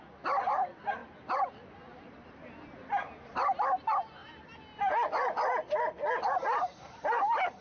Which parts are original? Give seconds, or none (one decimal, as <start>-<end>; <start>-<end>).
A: 0.0-7.6